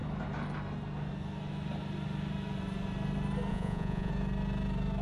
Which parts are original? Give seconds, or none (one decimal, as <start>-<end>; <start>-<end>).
0.0-3.5; 4.1-5.0